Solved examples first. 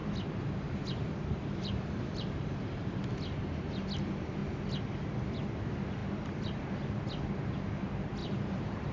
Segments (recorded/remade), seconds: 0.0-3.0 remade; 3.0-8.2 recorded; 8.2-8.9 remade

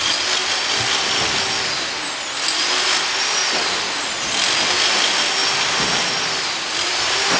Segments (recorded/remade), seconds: 0.0-3.4 recorded; 3.4-4.3 remade; 4.3-7.4 recorded

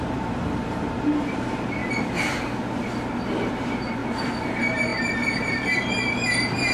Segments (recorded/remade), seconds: 0.0-1.8 remade; 1.8-3.5 recorded; 3.5-4.0 remade; 4.0-4.5 recorded; 4.5-6.7 remade

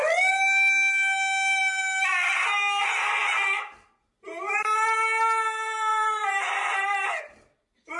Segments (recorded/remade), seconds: 0.0-5.9 recorded; 5.9-7.2 remade; 7.2-8.0 recorded

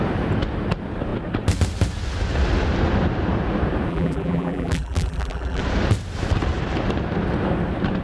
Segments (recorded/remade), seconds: 0.0-3.9 recorded; 3.9-5.6 remade; 5.6-8.0 recorded